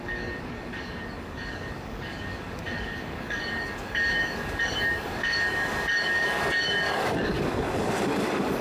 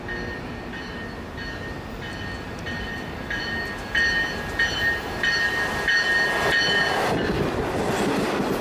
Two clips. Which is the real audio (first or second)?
second